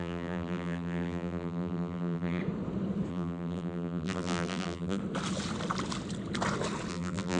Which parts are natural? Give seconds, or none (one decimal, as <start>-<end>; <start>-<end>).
2.4-3.1; 5.0-6.9